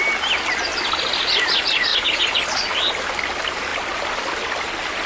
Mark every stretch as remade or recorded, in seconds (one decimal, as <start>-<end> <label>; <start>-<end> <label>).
0.0-5.1 recorded